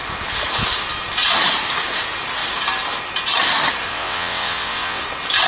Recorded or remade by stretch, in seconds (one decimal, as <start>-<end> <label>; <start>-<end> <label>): 0.0-3.9 recorded; 3.9-5.0 remade; 5.0-5.5 recorded